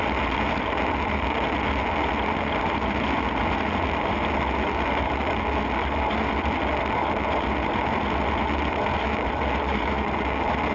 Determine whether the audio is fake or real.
real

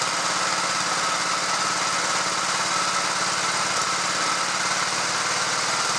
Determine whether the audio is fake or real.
real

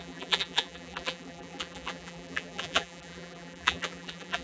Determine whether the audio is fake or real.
fake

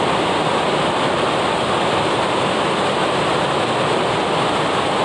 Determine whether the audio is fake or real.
real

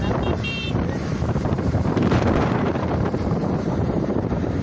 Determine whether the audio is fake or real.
fake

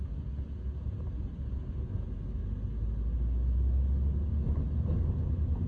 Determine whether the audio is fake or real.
real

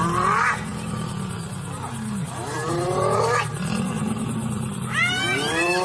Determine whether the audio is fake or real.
real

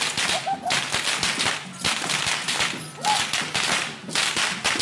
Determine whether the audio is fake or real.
real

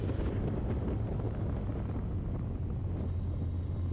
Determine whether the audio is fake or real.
real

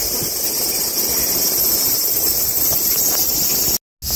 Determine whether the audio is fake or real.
real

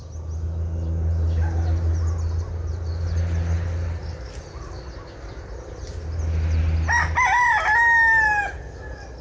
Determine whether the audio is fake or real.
real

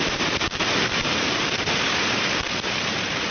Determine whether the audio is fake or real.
fake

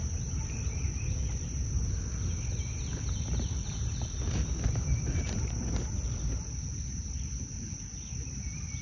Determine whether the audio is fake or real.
real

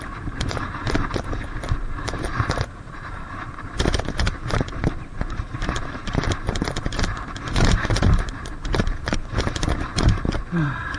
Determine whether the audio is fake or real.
fake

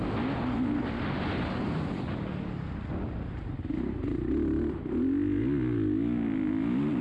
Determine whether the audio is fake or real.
real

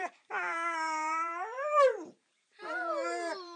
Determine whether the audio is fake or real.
fake